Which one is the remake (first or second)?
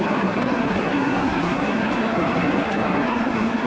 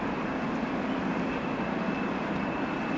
first